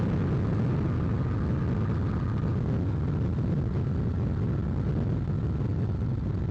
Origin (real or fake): real